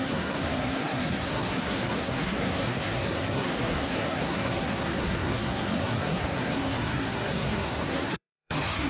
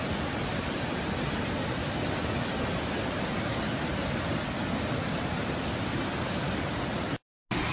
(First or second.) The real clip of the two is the second